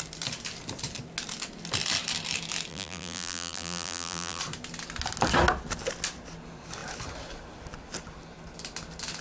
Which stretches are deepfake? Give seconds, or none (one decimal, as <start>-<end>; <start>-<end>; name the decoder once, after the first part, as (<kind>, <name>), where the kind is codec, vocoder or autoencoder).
2.7-4.4 (vocoder, BigVGAN v2)